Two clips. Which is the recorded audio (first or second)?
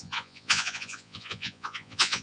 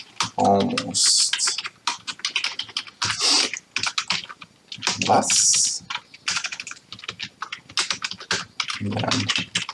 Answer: second